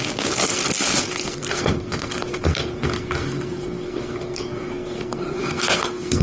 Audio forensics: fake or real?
fake